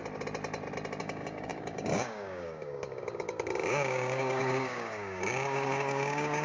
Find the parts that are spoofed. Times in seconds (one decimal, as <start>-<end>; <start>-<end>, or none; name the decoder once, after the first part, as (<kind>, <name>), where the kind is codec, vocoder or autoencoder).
1.0-6.4 (codec, DAC)